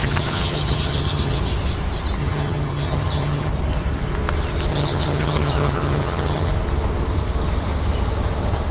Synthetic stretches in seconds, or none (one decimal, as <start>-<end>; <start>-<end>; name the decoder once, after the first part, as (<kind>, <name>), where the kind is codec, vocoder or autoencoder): 0.0-1.4 (vocoder, HiFi-GAN); 2.2-3.5; 4.7-6.5

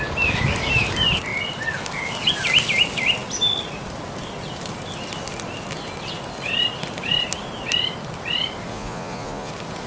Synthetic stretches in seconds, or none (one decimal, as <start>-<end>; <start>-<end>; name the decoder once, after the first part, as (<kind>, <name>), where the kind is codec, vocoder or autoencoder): 8.7-9.5 (vocoder, Vocos)

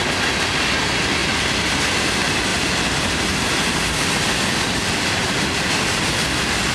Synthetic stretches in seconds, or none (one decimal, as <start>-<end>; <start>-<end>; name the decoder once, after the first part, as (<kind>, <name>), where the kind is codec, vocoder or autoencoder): 1.2-1.8 (vocoder, BigVGAN v2)

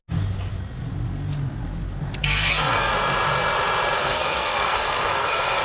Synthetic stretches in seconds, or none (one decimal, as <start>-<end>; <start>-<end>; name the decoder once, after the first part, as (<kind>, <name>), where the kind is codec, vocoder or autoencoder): 2.2-2.9 (codec, SNAC); 4.0-5.6